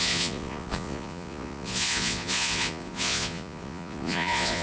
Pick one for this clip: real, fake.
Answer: fake